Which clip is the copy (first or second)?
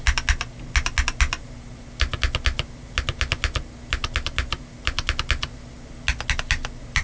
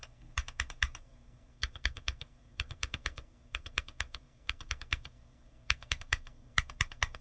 second